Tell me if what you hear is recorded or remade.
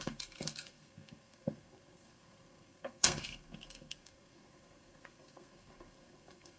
remade